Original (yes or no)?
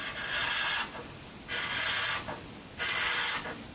yes